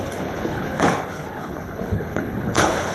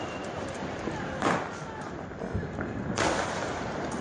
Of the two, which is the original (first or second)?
second